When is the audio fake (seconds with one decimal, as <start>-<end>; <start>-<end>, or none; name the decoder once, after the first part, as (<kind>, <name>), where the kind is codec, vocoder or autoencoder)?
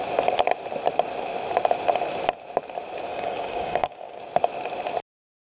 3.1-4.2 (codec, DAC)